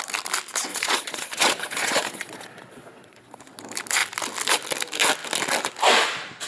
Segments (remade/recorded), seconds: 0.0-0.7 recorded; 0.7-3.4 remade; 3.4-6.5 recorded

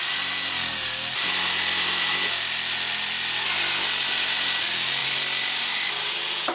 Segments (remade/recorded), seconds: 0.0-6.5 recorded

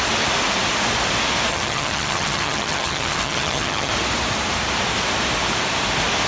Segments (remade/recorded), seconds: 0.0-1.5 recorded; 1.5-3.9 remade; 3.9-6.3 recorded

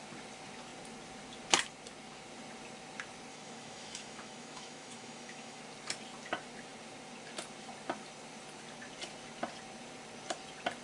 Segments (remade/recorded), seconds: 0.0-3.3 recorded; 3.3-5.6 remade; 5.6-10.8 recorded